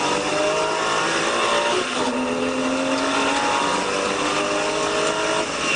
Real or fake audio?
real